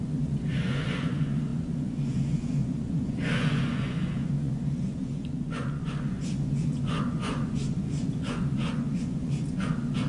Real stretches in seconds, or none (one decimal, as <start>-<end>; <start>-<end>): none